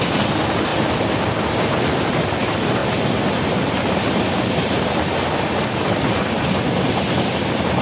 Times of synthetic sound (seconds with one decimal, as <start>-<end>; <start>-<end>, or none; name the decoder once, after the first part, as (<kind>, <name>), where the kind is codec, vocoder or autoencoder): none